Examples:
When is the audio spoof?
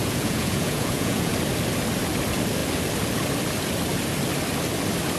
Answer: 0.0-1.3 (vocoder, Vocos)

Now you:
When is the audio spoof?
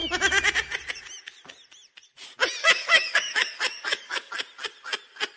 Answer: 2.6-4.3 (codec, DAC)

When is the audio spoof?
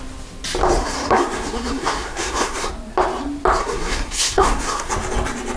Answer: 0.8-2.7 (codec, SNAC); 3.6-4.9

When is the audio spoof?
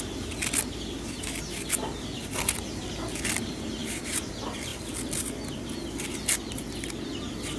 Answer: 3.8-4.3 (vocoder, BigVGAN v2)